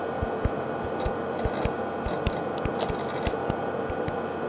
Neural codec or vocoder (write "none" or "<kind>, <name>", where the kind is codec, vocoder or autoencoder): none